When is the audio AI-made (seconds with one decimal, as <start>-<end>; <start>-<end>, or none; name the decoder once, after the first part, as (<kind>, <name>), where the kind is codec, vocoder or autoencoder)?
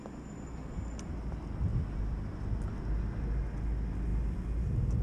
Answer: none